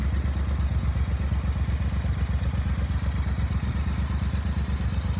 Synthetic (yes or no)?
no